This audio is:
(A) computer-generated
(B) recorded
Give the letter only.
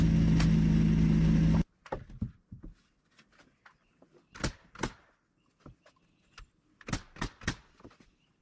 B